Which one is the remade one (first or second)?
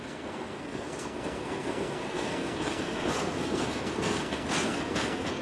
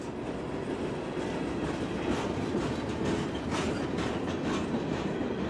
first